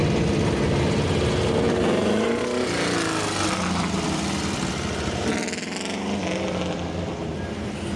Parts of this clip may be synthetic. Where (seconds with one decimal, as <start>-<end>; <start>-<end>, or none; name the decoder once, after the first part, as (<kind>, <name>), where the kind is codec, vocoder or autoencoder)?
0.0-2.4 (vocoder, BigVGAN v2)

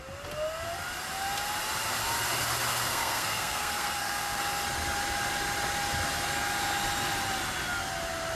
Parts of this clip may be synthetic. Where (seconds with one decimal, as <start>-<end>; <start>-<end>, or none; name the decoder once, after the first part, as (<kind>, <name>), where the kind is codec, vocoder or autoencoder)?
2.7-4.4 (codec, SNAC)

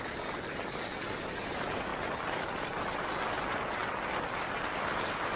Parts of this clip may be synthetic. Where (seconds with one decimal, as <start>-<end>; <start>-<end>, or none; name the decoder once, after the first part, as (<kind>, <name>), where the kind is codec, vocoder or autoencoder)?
0.0-3.8 (vocoder, BigVGAN v2); 4.6-5.4

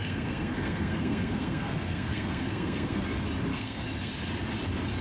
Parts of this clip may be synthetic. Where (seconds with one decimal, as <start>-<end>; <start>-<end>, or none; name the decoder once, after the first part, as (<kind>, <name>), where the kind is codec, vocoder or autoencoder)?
0.0-3.0 (codec, SNAC); 3.5-4.1

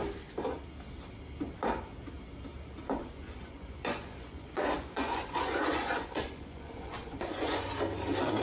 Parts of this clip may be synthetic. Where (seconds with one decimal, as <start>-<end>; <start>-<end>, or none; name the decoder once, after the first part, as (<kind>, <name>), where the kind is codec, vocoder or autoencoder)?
3.0-7.7 (vocoder, Vocos)

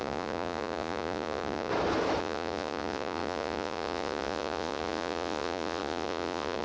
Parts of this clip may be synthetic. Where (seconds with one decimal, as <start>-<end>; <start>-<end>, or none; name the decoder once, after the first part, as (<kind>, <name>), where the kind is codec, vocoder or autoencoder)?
0.0-1.7 (vocoder, Vocos); 2.2-6.6

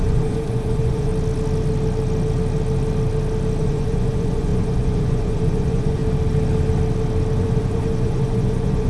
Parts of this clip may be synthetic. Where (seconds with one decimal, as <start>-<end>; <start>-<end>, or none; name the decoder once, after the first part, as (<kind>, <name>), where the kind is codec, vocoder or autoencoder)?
0.0-1.1 (vocoder, Vocos); 3.6-6.0; 7.4-8.9

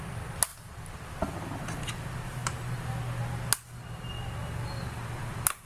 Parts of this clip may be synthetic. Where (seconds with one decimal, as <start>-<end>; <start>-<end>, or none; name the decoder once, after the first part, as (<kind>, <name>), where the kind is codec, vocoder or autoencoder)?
none